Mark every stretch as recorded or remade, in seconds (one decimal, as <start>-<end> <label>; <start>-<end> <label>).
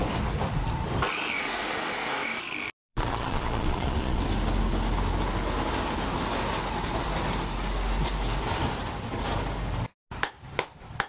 0.0-2.9 recorded; 2.9-4.2 remade; 4.2-11.1 recorded